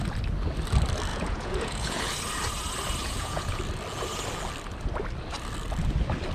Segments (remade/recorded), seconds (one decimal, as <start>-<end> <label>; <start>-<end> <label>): 0.0-1.1 recorded; 1.1-2.1 remade; 2.1-3.0 recorded; 3.0-3.6 remade; 3.6-6.3 recorded